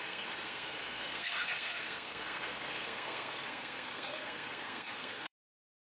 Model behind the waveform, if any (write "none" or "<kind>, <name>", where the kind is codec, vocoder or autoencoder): codec, SNAC